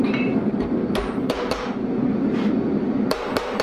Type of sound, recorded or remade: remade